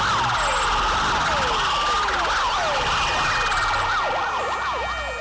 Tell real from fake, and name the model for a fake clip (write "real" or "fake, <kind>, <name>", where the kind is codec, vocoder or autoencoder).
real